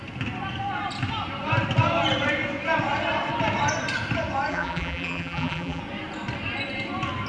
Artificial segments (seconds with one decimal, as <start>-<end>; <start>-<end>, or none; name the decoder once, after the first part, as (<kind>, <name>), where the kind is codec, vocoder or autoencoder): 4.5-5.8 (vocoder, BigVGAN v2)